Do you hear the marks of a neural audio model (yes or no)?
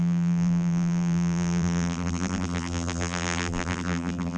yes